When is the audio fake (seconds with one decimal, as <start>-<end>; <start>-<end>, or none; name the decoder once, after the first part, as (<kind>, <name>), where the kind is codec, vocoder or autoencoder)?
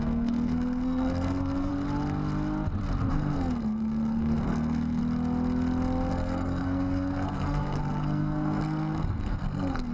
0.0-1.7 (codec, SNAC); 3.1-5.0; 6.1-9.9